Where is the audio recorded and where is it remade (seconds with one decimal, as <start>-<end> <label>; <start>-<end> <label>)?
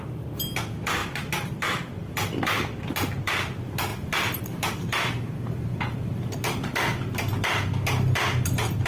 0.0-1.0 recorded; 1.0-2.9 remade; 2.9-3.9 recorded; 3.9-4.4 remade; 4.4-5.7 recorded; 5.7-7.2 remade; 7.2-8.9 recorded